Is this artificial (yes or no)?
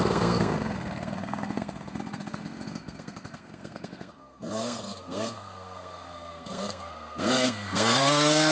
yes